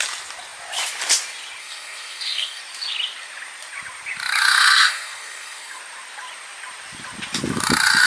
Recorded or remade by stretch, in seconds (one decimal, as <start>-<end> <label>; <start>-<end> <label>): 0.0-1.6 recorded; 1.6-2.6 remade; 2.6-4.5 recorded; 4.5-5.8 remade; 5.8-8.1 recorded